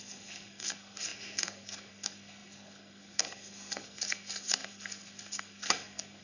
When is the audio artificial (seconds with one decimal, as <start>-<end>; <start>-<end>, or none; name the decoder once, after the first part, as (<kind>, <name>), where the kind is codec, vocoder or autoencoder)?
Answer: 0.0-6.2 (codec, SNAC)